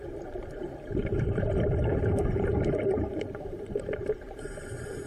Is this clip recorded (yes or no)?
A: no